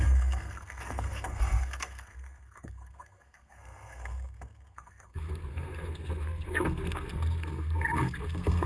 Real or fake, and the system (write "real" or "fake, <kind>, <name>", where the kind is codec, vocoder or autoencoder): fake, codec, SNAC